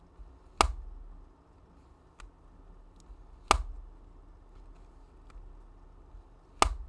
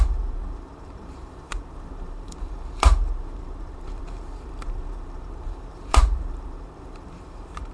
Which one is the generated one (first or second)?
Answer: second